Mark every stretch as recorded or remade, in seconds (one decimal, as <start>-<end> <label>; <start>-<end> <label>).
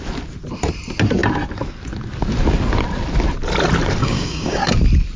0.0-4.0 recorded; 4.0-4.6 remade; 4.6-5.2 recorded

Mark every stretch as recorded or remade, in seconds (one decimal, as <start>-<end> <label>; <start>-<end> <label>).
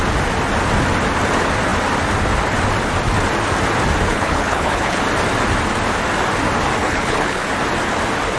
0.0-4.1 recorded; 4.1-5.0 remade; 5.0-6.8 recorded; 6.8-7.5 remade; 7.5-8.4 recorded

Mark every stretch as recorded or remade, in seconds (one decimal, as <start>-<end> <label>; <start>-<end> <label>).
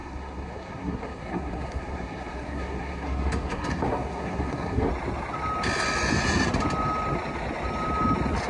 0.0-4.9 remade; 4.9-8.5 recorded